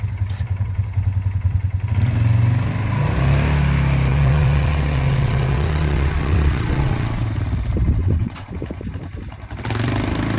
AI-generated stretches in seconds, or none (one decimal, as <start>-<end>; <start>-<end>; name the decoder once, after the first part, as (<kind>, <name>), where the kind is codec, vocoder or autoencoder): 4.1-7.2 (vocoder, WaveNeXt); 8.0-8.5